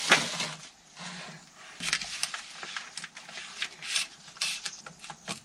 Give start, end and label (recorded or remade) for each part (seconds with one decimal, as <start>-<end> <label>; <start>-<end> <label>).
0.0-2.2 recorded; 2.2-4.7 remade; 4.7-5.4 recorded